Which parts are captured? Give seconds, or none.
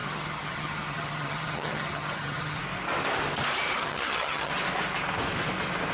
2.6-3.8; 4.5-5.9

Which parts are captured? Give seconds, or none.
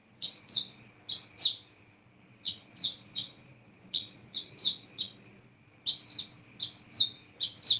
0.9-2.3; 5.8-7.8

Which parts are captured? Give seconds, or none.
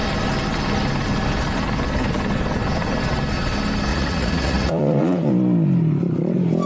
0.0-3.9; 5.3-6.7